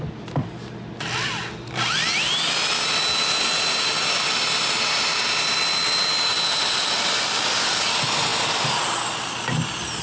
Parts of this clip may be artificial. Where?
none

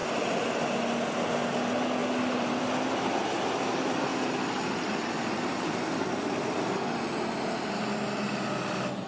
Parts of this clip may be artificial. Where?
none

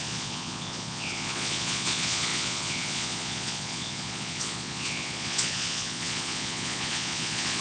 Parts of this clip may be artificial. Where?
0.0-7.6 (vocoder, Vocos)

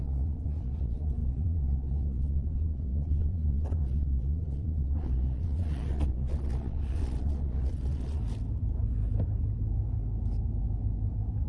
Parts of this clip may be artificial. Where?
0.0-8.2 (vocoder, Vocos)

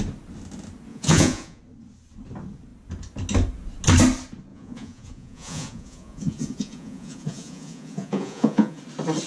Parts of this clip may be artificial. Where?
0.9-1.6 (vocoder, Vocos); 4.5-8.8

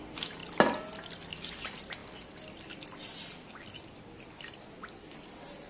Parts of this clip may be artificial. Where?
none

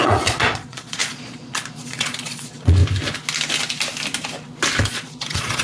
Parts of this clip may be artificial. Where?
0.0-2.8 (vocoder, Vocos); 4.8-5.6